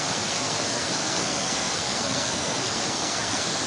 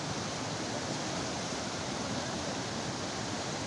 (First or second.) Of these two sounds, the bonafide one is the second